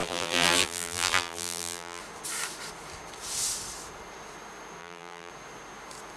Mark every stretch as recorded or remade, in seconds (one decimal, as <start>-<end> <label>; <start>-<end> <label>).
0.0-2.0 remade; 2.0-4.8 recorded; 4.8-5.3 remade; 5.3-6.2 recorded